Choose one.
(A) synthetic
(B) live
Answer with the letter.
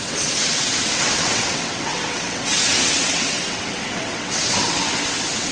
A